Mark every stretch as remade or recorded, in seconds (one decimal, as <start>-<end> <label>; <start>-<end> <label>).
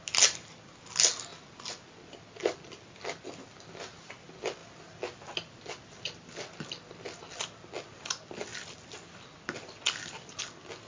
0.0-10.9 recorded